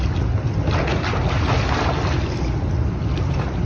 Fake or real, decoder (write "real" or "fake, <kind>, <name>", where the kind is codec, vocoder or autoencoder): real